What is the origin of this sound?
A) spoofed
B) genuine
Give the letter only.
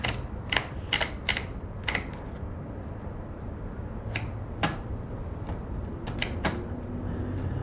B